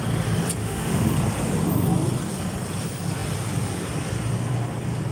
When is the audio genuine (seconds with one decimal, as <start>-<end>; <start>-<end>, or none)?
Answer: 0.0-0.6; 1.1-5.1